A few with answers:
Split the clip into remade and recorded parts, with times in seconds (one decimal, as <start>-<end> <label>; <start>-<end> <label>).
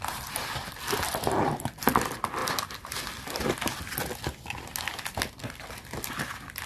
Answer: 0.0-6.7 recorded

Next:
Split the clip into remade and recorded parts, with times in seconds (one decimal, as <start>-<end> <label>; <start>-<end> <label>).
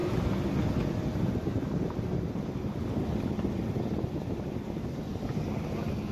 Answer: 0.0-6.1 recorded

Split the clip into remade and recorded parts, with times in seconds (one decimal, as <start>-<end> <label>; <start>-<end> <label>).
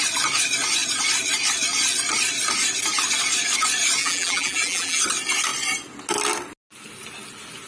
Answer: 0.0-4.0 recorded; 4.0-5.0 remade; 5.0-7.7 recorded